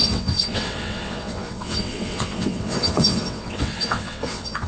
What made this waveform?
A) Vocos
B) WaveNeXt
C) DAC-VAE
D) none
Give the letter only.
B